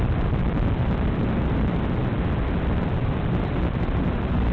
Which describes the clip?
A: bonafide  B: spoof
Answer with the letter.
B